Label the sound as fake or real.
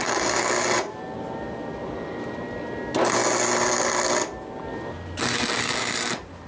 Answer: real